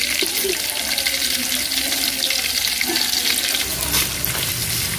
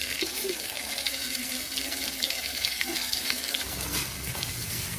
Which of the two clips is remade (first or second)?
second